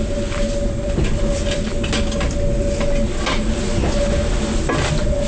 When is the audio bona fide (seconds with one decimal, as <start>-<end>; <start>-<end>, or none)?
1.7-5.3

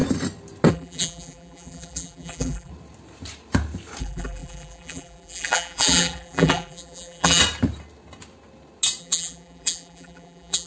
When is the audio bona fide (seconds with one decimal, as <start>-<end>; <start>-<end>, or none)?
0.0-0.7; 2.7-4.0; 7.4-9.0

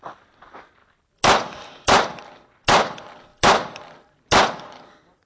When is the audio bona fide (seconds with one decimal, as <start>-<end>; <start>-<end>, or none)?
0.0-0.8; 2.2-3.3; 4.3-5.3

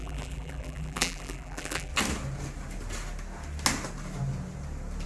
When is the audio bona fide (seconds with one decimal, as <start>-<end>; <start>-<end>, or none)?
1.9-5.1